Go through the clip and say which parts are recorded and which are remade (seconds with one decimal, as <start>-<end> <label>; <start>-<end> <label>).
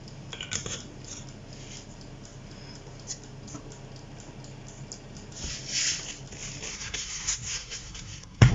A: 0.0-6.7 recorded; 6.7-8.5 remade